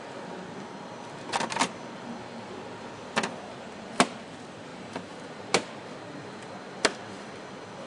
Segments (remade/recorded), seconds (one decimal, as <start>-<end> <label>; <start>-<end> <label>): 0.0-4.7 recorded; 4.7-5.4 remade; 5.4-7.9 recorded